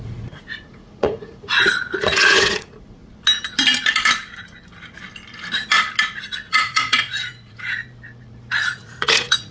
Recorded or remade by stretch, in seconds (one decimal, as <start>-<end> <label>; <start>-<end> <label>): 0.0-3.0 remade; 3.0-6.2 recorded; 6.2-7.8 remade; 7.8-8.6 recorded; 8.6-9.5 remade